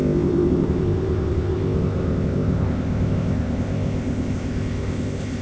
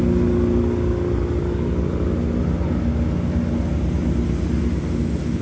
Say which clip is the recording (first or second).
second